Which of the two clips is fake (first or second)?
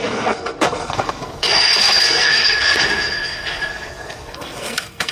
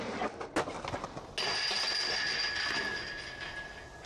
first